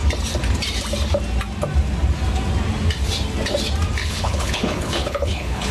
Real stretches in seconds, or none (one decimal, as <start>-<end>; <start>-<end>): 0.0-4.0